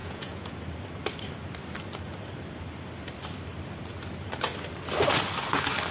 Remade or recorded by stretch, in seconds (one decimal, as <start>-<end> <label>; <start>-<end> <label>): 0.0-0.5 remade; 0.5-5.9 recorded